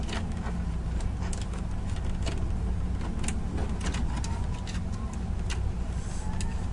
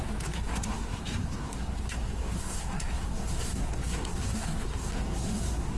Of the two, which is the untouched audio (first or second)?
first